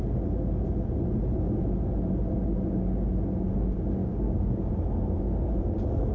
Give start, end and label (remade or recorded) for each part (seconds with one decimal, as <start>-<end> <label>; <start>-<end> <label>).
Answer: 0.0-4.0 recorded; 4.0-4.7 remade; 4.7-6.1 recorded